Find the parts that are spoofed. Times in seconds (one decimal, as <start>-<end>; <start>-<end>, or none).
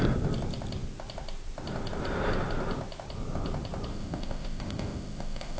3.9-5.6